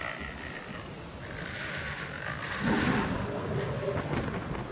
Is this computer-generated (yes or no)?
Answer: no